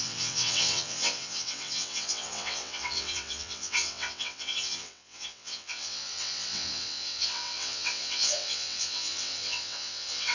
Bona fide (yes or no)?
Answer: no